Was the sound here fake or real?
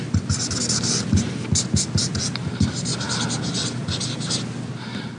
real